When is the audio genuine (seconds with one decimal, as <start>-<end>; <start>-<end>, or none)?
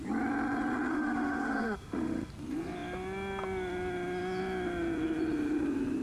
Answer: 0.0-0.9; 2.3-6.0